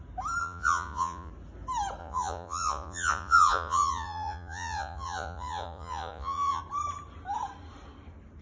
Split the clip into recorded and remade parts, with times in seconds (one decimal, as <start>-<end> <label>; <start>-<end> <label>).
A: 0.0-0.4 recorded; 0.4-1.3 remade; 1.3-2.0 recorded; 2.0-6.6 remade; 6.6-8.4 recorded